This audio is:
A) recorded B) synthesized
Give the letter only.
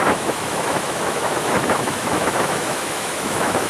B